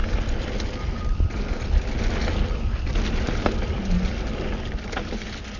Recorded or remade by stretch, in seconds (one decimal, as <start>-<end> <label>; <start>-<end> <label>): 0.0-5.6 recorded